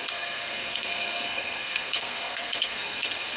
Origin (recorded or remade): remade